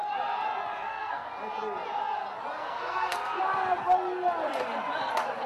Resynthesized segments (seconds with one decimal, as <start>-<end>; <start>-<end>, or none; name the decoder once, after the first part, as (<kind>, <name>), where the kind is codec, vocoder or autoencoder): 0.7-1.3 (codec, SNAC); 2.6-3.4